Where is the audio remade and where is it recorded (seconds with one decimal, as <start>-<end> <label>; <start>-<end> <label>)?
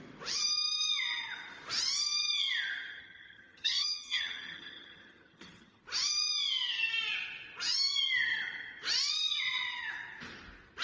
0.0-3.0 recorded; 3.0-5.8 remade; 5.8-10.8 recorded